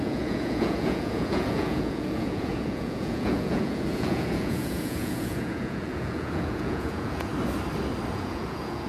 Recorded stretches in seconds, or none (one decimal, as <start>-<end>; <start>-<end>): 7.3-8.1